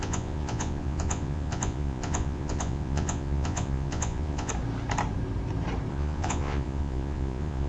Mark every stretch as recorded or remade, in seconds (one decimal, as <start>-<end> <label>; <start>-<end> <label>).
0.0-4.5 remade; 4.5-5.9 recorded; 5.9-7.7 remade

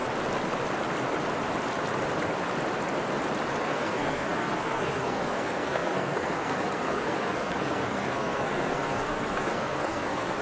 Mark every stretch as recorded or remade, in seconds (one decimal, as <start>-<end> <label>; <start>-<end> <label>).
0.0-3.6 recorded; 3.6-10.4 remade